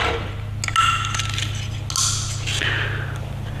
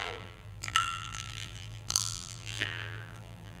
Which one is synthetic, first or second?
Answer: second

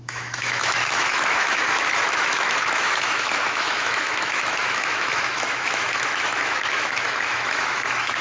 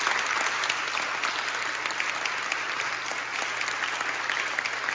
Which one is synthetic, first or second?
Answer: first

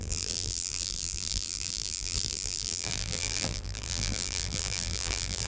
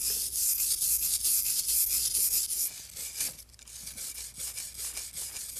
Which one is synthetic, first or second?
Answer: first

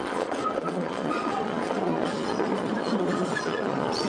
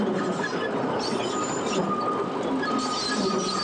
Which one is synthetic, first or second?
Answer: first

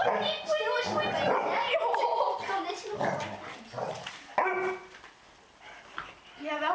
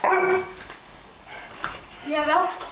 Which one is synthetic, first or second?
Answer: second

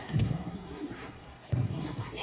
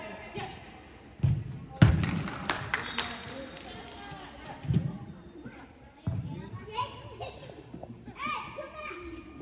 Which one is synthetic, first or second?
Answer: first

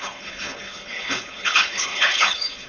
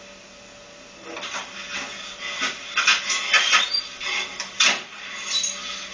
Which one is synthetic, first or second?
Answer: first